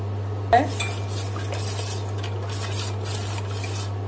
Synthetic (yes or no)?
no